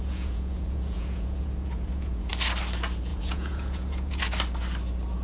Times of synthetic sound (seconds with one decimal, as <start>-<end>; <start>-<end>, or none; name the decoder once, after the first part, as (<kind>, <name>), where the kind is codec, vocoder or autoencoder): 0.0-2.3 (vocoder, Vocos); 3.1-4.2